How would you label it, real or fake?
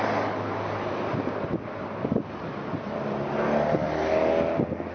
real